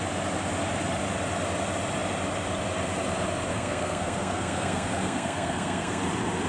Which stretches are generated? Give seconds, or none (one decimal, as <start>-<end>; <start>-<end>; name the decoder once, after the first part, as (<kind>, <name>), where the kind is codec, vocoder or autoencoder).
3.5-6.0 (codec, SNAC)

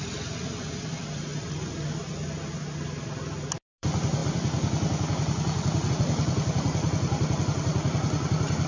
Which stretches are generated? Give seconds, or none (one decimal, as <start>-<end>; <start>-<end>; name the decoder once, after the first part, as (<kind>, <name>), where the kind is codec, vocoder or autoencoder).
0.0-1.3 (vocoder, BigVGAN v2); 2.9-4.2; 5.9-8.7

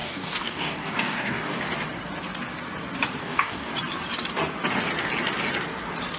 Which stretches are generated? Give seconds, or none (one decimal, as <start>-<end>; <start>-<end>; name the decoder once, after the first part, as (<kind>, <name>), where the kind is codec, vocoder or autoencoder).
0.0-1.6 (codec, DAC); 3.2-3.7

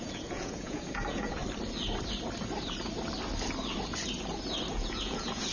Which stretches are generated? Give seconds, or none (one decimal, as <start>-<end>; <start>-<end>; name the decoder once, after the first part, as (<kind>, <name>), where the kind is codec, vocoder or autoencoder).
0.0-1.4 (vocoder, Vocos); 4.7-5.5

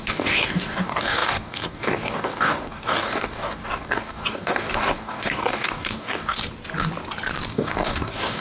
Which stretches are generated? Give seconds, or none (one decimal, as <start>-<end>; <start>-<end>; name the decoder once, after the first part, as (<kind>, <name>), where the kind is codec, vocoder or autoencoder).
0.0-6.4 (codec, DAC); 7.5-8.4

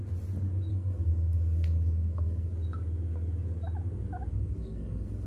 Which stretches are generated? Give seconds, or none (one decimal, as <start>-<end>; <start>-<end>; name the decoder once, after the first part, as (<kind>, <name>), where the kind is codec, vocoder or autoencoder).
0.7-2.5 (codec, SNAC); 4.3-5.3